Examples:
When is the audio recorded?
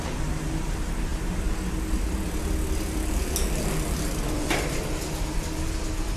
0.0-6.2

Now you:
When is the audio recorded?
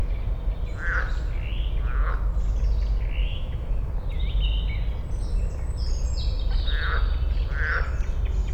0.0-3.2; 3.9-8.5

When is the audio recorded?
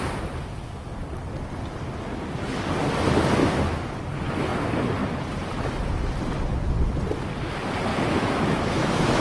0.0-3.4; 4.0-7.9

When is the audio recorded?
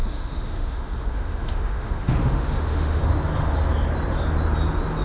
3.0-5.0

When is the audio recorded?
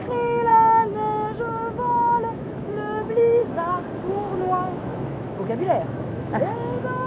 0.5-1.5; 3.4-4.1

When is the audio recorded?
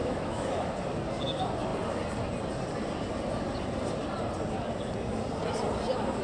0.7-6.2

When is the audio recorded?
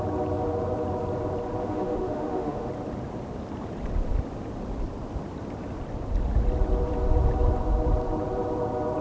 0.0-1.6; 2.7-9.0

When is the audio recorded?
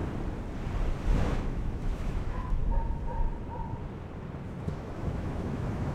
0.0-1.2; 2.6-4.6